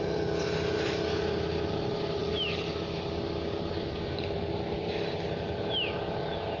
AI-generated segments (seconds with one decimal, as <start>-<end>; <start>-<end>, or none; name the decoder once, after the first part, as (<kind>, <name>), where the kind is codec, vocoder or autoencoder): none